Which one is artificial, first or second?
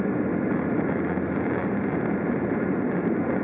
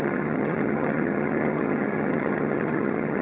second